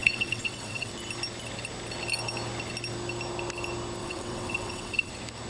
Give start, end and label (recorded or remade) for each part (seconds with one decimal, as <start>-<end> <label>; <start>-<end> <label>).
0.0-0.9 remade; 0.9-4.0 recorded; 4.0-5.1 remade; 5.1-5.5 recorded